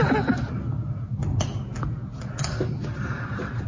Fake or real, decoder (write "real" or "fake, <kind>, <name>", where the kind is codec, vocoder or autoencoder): real